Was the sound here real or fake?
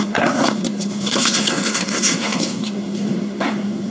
fake